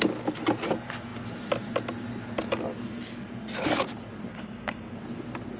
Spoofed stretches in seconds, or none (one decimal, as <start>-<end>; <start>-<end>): 4.3-5.0